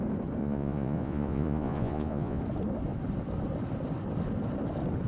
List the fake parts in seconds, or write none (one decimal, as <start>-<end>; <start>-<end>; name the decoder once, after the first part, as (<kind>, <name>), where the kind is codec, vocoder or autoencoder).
0.4-2.4 (vocoder, Vocos)

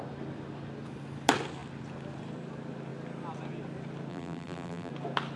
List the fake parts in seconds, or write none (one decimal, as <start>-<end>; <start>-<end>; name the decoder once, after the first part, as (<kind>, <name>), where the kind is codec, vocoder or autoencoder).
4.1-4.9 (vocoder, BigVGAN v2)

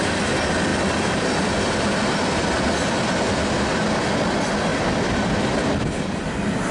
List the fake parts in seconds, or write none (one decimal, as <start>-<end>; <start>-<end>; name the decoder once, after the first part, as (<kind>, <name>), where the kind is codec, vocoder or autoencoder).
0.7-1.8 (vocoder, BigVGAN v2); 4.7-5.7

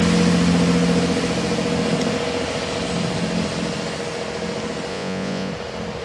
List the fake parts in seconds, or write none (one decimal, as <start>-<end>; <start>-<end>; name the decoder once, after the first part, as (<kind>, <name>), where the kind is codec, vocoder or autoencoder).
4.9-5.5 (vocoder, Vocos)